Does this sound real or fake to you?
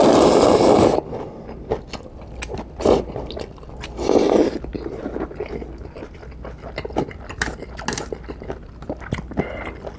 real